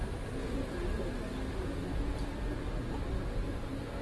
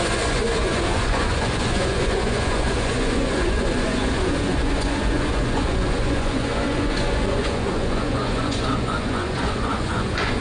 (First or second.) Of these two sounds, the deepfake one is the second